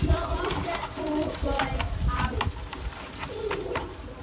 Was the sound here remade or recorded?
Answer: recorded